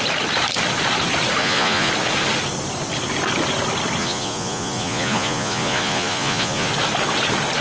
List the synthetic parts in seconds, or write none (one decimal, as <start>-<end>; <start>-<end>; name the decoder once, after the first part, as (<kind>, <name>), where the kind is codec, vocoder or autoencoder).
1.4-1.9 (vocoder, Vocos); 4.0-6.7